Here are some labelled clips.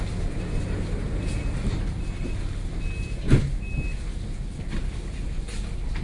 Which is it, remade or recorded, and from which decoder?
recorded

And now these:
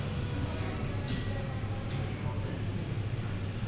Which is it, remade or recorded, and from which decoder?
recorded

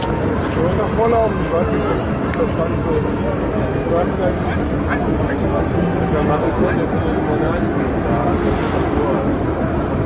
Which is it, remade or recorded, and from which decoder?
recorded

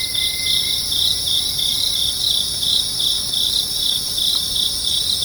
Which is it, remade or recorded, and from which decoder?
recorded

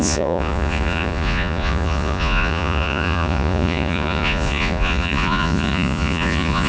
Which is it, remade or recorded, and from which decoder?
remade, vocoder, Vocos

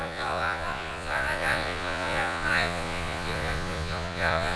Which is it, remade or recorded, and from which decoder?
remade, vocoder, Vocos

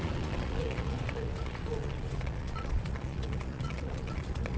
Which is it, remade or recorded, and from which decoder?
remade, vocoder, Vocos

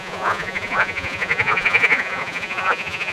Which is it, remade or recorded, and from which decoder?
remade, vocoder, Vocos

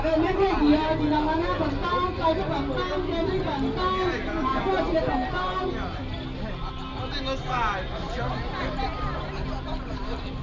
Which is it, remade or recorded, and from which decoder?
recorded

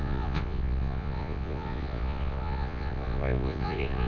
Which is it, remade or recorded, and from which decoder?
remade, vocoder, Vocos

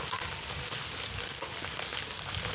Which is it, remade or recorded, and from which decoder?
recorded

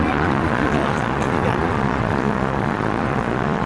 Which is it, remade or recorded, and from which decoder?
remade, vocoder, Vocos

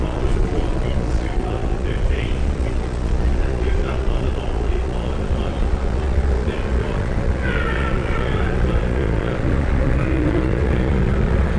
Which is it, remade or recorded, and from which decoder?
remade, vocoder, Vocos